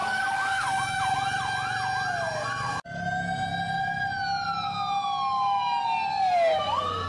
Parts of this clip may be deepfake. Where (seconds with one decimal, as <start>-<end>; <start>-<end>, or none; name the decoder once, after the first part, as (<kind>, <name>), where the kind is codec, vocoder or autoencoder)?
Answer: 0.0-1.0 (codec, DAC)